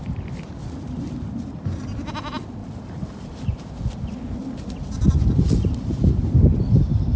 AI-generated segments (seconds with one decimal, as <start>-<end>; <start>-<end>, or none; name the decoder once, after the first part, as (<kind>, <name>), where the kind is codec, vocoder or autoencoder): 2.6-3.7 (vocoder, BigVGAN v2); 5.6-6.2